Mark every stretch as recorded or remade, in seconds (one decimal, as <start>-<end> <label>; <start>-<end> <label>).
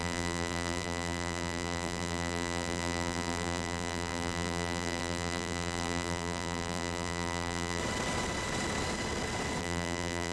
0.0-7.8 remade; 7.8-9.6 recorded; 9.6-10.3 remade